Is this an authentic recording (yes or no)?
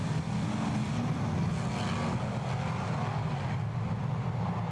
yes